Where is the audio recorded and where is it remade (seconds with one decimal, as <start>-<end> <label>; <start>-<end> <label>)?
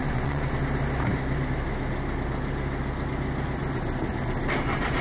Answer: 0.0-0.6 remade; 0.6-5.0 recorded